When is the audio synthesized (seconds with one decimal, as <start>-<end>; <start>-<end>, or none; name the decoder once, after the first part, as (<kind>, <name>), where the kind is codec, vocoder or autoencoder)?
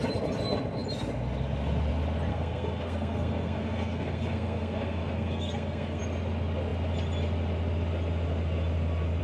2.3-6.0 (codec, SNAC)